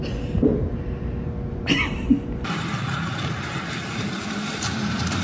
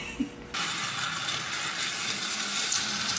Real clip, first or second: second